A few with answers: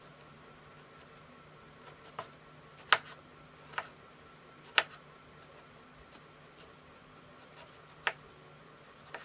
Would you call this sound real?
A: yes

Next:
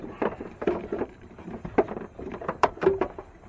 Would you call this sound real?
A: no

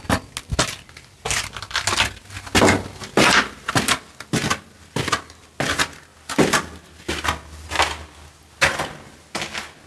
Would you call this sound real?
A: yes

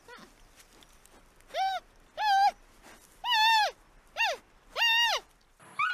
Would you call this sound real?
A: yes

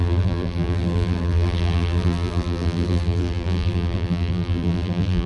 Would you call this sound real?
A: no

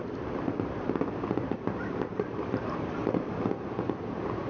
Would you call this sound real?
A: no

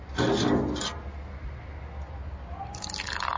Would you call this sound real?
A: yes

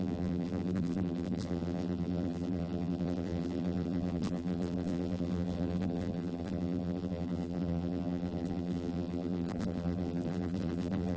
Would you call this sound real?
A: no